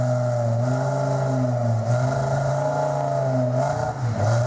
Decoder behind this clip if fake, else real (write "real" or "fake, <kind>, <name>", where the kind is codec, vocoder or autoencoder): real